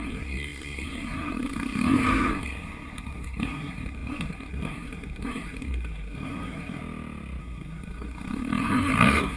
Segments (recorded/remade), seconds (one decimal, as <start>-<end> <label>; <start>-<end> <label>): 0.0-6.8 remade; 6.8-7.4 recorded; 7.4-9.4 remade